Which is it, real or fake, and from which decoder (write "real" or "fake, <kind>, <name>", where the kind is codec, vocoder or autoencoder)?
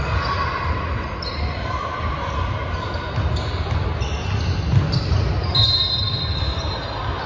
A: real